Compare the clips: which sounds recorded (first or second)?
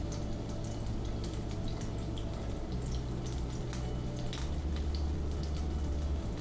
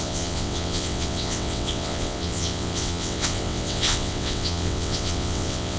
first